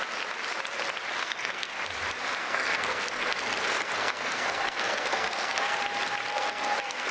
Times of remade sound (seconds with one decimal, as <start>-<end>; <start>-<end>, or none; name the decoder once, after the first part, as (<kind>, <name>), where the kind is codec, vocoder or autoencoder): 1.2-1.8 (codec, SNAC); 2.4-5.8; 6.3-7.1